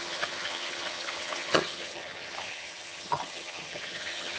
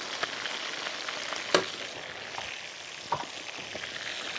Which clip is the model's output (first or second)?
first